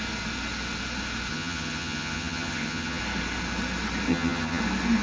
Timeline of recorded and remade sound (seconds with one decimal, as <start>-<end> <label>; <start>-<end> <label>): 0.0-1.3 recorded; 1.3-3.0 remade; 3.0-4.1 recorded; 4.1-4.6 remade; 4.6-5.0 recorded